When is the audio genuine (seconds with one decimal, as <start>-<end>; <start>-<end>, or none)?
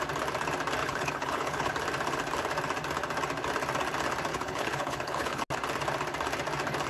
0.0-0.8; 1.7-4.3; 5.4-6.9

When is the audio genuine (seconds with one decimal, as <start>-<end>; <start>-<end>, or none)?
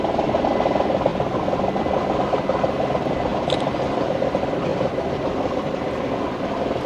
0.0-3.3; 4.0-4.7; 6.1-6.9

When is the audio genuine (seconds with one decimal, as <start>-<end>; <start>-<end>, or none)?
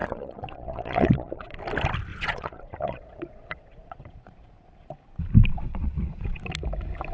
1.5-2.1; 4.9-5.5; 6.4-7.1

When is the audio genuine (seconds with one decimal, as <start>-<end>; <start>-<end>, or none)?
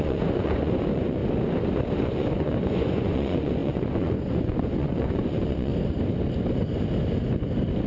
1.2-2.0; 5.7-7.9